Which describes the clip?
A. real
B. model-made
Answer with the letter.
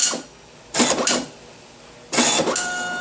A